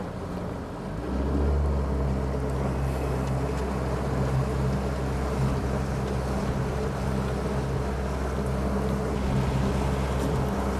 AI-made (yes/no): no